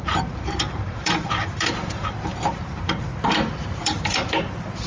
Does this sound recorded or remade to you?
remade